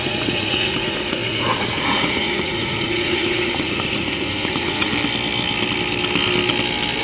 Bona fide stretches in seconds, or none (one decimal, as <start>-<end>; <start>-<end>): 4.9-7.0

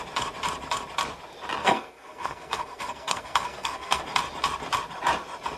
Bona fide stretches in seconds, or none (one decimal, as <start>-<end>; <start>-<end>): 0.0-1.6; 4.0-5.6

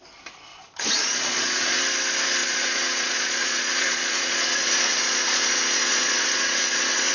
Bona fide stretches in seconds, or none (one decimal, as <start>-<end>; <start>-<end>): 0.0-0.5; 1.8-2.4

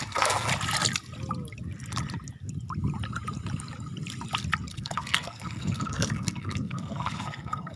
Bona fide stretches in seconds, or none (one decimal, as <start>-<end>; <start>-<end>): 0.5-4.7

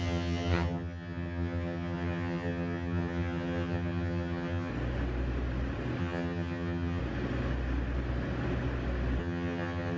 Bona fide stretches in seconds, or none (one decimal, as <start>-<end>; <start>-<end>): 4.7-6.0; 7.0-9.2

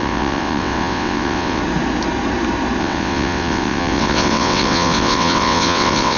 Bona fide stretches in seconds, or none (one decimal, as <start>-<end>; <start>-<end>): 1.6-2.8